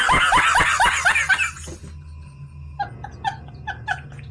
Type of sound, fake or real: real